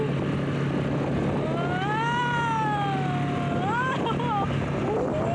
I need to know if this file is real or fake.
real